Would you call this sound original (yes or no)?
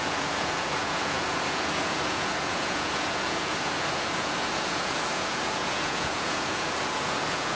no